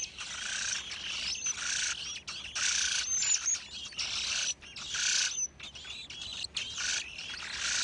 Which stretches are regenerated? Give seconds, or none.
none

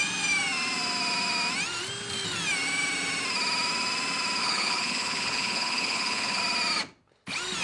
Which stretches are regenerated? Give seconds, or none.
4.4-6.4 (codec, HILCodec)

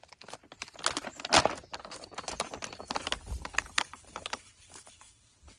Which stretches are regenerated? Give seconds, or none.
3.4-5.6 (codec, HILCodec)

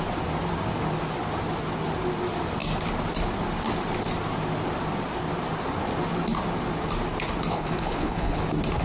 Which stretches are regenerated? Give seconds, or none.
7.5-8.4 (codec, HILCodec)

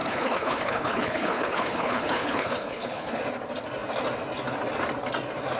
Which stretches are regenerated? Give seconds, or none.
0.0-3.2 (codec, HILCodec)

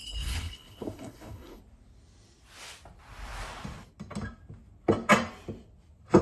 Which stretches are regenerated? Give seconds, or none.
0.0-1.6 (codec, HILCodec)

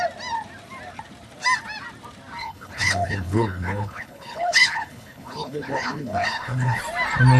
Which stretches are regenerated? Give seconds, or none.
2.4-6.8 (codec, HILCodec)